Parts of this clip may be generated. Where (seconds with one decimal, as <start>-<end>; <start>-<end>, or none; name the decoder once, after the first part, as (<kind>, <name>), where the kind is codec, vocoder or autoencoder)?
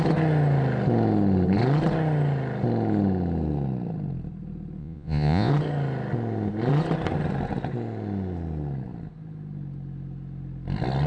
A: 4.8-5.5 (vocoder, Vocos)